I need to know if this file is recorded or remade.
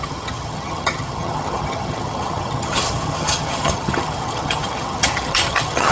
remade